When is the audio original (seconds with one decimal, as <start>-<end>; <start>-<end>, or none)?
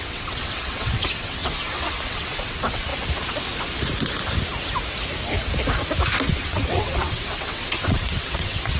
2.9-6.3